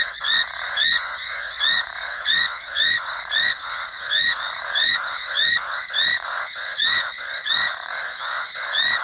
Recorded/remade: remade